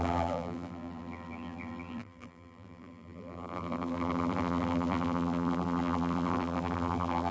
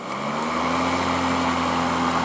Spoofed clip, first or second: first